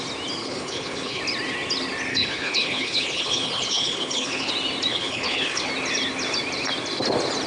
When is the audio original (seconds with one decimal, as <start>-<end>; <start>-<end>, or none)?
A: 0.0-0.4; 1.2-2.1; 4.5-4.9; 5.7-7.5